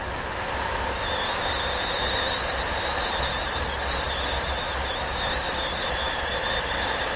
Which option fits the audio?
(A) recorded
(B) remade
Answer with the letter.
A